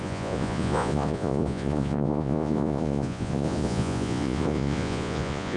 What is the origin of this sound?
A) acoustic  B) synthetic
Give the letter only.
B